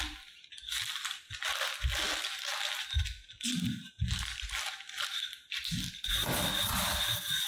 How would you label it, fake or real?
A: real